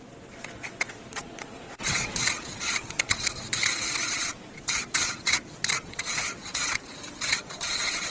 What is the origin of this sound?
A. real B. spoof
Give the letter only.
B